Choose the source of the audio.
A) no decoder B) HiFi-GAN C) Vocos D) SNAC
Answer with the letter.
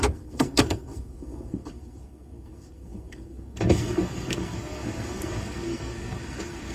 D